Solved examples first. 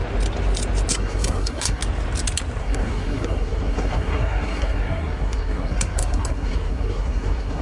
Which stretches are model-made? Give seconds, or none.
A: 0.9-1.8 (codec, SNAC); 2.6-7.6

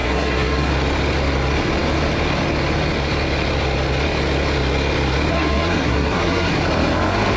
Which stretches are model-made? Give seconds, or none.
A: 0.0-0.7 (codec, SNAC); 5.3-6.5

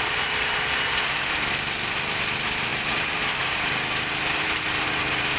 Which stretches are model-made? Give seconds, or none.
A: none

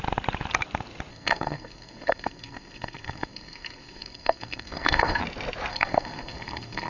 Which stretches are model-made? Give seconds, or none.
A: 1.1-5.2 (codec, SNAC); 5.7-6.9

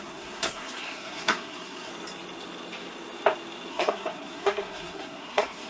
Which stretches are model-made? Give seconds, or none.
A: 0.0-1.9 (codec, SNAC); 3.7-5.7

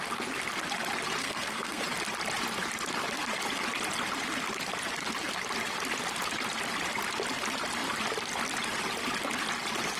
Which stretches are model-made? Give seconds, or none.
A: 1.2-1.8 (codec, SNAC)

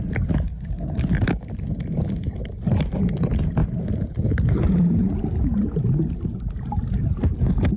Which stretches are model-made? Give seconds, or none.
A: none

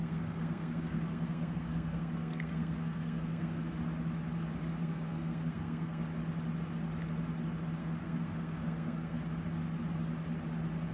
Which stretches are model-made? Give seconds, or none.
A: 0.0-3.6 (codec, SNAC); 4.8-6.0; 7.8-9.2